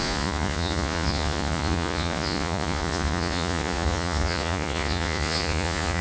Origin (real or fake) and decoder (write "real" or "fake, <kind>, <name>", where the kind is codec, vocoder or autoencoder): fake, vocoder, Vocos